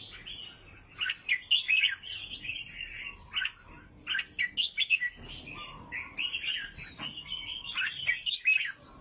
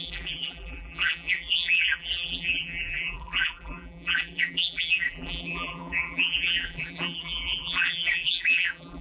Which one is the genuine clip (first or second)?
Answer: first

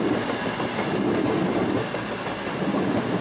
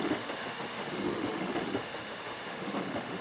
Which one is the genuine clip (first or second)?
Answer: first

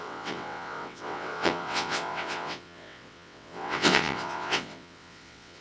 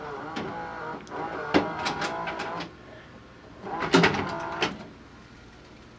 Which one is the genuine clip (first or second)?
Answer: second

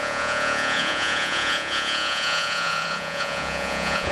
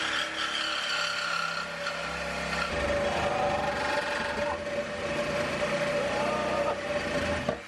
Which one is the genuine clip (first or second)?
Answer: second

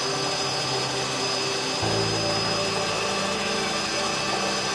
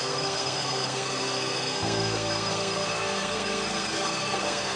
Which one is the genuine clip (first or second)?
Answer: first